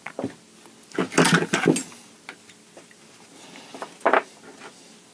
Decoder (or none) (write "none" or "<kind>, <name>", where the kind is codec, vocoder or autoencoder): none